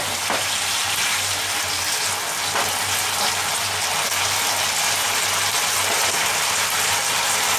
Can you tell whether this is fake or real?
real